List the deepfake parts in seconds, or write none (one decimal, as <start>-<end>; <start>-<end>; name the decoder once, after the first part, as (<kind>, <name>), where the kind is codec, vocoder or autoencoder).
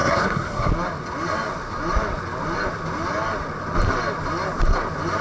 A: 0.0-0.7 (codec, SNAC)